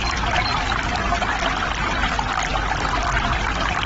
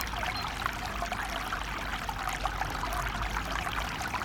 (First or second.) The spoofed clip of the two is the first